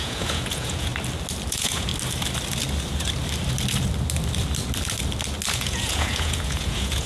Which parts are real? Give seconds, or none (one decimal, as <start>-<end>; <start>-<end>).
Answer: 0.9-1.5; 1.9-5.5